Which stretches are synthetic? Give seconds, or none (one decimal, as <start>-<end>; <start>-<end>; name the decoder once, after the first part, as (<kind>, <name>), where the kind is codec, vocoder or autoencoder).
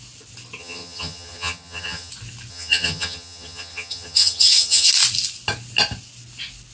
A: 0.6-2.1 (vocoder, HiFi-GAN); 2.5-4.9